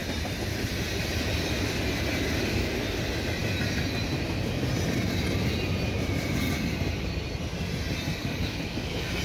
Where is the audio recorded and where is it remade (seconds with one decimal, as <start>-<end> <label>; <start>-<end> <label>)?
0.0-8.2 recorded; 8.2-9.2 remade